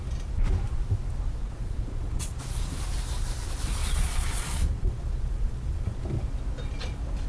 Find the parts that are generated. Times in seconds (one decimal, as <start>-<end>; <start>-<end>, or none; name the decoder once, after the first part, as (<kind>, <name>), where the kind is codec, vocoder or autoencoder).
1.4-2.7 (vocoder, Vocos); 3.8-6.0